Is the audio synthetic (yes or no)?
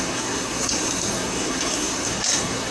yes